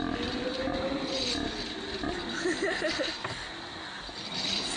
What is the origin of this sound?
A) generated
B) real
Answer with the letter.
B